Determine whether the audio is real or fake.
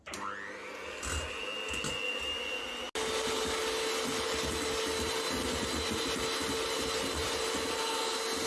real